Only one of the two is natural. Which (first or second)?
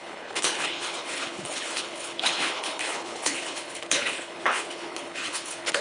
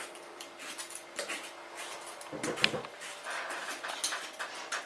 second